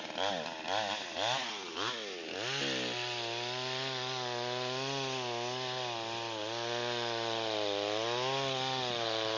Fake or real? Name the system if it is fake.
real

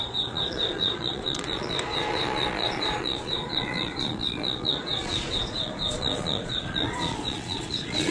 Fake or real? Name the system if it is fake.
fake, vocoder, Vocos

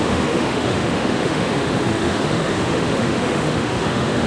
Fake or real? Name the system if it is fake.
fake, autoencoder, DAC-VAE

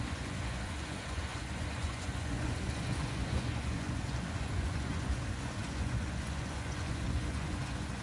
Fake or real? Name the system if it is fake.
fake, vocoder, Vocos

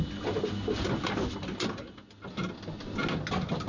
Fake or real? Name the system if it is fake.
real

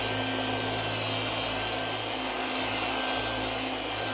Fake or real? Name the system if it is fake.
real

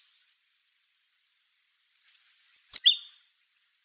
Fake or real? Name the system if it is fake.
real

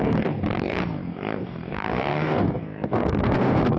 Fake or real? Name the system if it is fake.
fake, codec, DAC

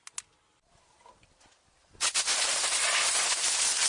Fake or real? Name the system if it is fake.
real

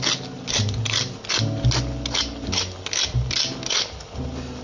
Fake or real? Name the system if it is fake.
real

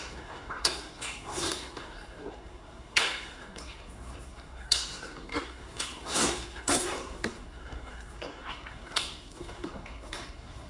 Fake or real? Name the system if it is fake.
fake, codec, SNAC